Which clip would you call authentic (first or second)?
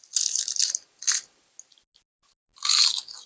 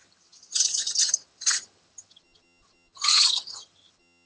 first